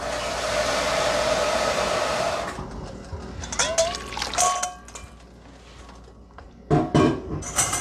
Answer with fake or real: real